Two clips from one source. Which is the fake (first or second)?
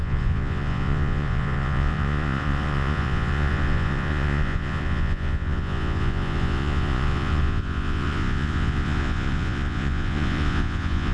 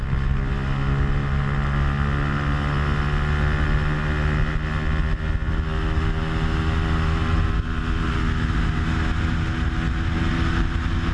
first